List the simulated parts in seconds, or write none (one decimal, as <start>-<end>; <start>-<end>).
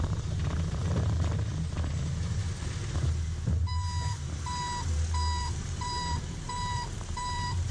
0.0-0.8; 5.4-7.7